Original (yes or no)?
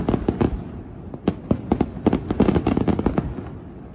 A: yes